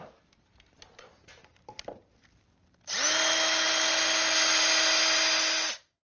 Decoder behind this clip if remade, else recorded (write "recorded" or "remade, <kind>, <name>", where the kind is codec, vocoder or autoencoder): recorded